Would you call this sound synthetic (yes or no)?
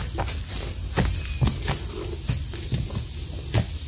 no